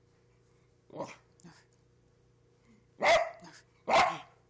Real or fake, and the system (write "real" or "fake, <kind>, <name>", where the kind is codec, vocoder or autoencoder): real